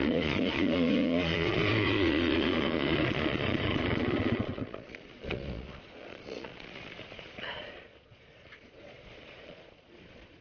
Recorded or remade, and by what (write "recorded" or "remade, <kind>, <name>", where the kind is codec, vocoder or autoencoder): remade, vocoder, Vocos